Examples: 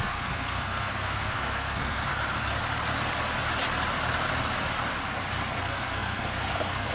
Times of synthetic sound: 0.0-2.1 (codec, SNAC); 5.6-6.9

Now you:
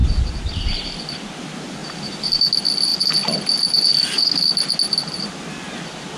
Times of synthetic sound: none